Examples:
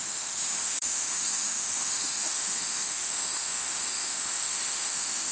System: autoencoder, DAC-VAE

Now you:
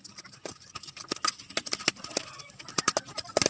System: none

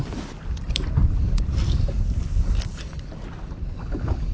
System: none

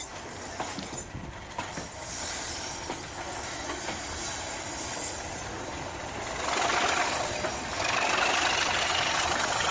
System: none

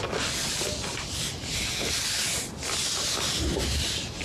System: none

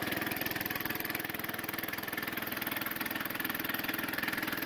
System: none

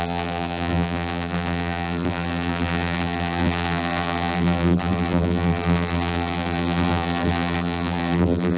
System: vocoder, BigVGAN v2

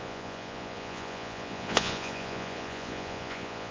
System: vocoder, Vocos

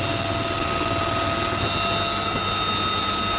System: none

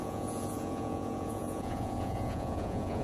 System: vocoder, Vocos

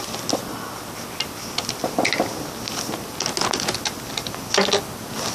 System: none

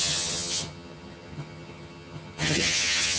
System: vocoder, HiFi-GAN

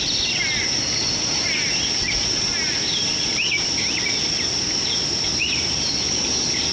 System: none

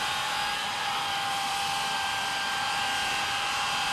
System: vocoder, BigVGAN v2